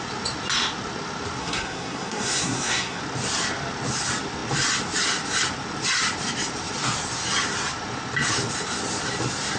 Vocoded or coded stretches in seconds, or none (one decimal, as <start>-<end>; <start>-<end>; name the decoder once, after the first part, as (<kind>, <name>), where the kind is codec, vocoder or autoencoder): 1.4-3.0 (codec, SNAC)